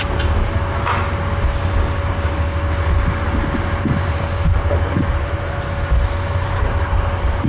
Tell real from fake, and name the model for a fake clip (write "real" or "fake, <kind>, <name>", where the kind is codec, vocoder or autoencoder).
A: real